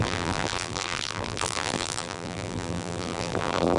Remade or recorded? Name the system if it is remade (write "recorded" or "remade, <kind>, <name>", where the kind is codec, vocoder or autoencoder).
remade, vocoder, BigVGAN v2